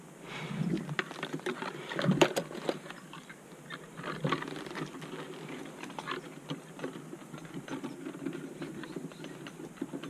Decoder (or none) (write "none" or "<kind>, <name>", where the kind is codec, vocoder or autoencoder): none